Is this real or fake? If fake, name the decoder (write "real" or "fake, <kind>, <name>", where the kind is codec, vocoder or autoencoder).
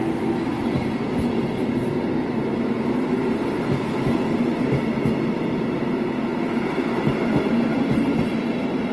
real